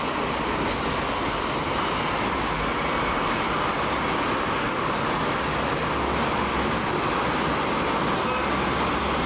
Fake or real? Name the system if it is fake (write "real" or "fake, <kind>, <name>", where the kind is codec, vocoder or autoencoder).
real